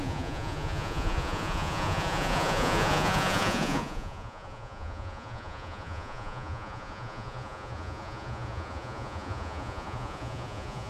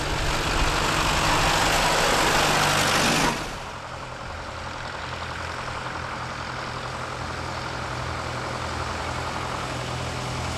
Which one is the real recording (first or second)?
second